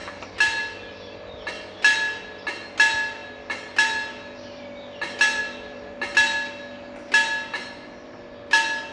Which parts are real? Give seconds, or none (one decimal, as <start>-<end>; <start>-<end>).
0.0-8.9